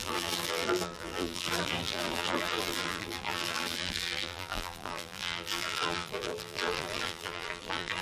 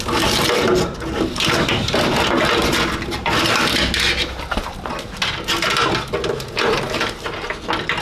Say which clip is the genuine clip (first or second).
second